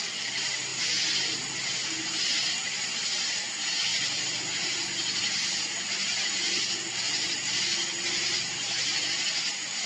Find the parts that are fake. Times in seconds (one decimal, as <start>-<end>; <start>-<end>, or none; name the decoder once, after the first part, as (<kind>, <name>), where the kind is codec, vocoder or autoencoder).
none